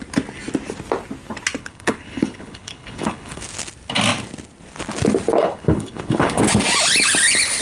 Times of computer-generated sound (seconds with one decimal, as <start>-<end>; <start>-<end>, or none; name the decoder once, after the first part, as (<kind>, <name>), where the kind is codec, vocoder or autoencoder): 1.6-3.4 (codec, HILCodec); 5.4-6.4